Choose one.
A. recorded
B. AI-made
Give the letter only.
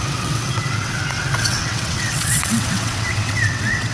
B